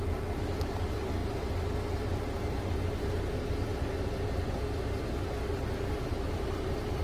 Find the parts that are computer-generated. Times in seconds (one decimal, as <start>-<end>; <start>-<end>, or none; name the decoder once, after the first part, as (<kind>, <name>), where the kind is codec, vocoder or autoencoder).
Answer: none